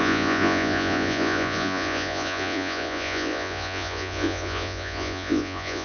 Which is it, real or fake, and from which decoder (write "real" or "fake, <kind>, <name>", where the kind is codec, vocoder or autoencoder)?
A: fake, vocoder, Vocos